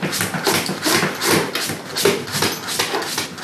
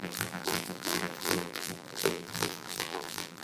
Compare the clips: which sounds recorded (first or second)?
first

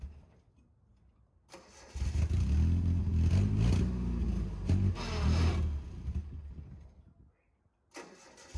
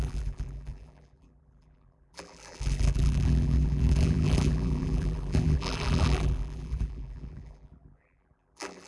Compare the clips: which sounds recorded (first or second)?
first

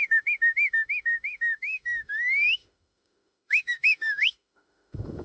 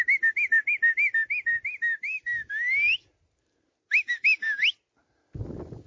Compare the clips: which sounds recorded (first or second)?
second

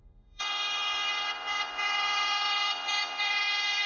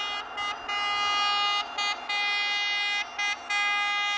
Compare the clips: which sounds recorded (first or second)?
second